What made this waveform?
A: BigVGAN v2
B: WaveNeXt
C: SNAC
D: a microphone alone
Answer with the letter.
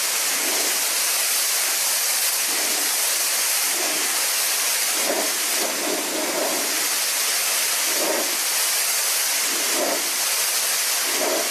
D